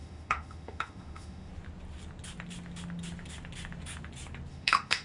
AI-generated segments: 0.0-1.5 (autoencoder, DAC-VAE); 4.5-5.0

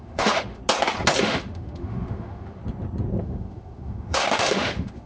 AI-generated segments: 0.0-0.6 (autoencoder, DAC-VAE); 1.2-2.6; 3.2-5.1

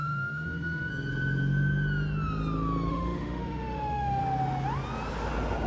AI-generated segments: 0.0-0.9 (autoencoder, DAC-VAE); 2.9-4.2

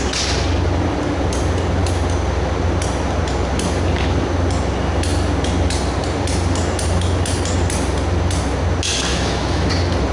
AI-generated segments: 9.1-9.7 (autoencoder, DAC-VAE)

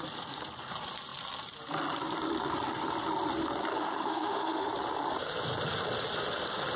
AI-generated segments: 3.7-4.7 (autoencoder, DAC-VAE)

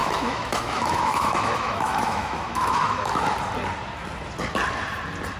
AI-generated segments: 0.0-3.2 (autoencoder, DAC-VAE)